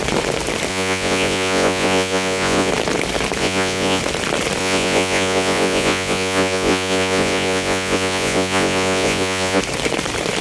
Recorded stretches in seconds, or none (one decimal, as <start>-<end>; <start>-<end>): 0.0-0.7; 2.7-3.4; 4.0-4.6; 9.6-10.4